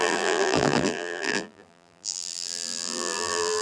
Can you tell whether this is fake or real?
fake